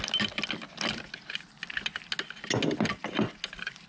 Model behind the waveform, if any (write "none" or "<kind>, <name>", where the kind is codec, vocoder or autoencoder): none